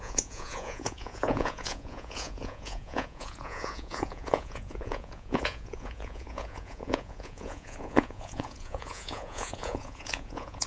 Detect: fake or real fake